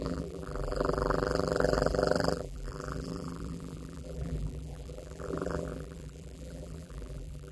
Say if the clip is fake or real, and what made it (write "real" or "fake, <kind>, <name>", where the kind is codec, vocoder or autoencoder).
fake, vocoder, BigVGAN v2